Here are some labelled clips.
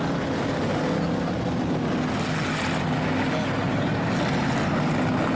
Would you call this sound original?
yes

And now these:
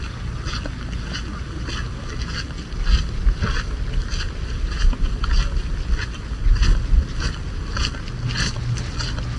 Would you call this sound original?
yes